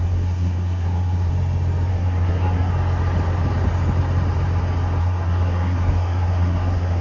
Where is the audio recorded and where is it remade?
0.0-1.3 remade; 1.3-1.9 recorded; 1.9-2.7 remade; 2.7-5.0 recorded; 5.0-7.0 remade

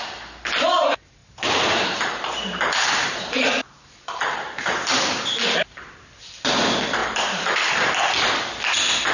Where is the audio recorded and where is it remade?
0.0-1.2 recorded; 1.2-5.0 remade; 5.0-7.0 recorded; 7.0-7.8 remade; 7.8-9.1 recorded